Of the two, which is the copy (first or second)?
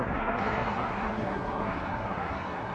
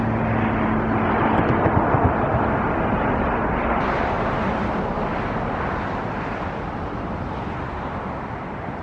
first